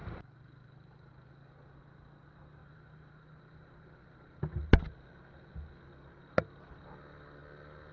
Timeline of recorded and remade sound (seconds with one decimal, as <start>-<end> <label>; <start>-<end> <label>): 0.0-1.3 remade; 1.3-2.6 recorded; 2.6-3.1 remade; 3.1-7.9 recorded